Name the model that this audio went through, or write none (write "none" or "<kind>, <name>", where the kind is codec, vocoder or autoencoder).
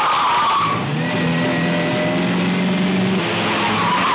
none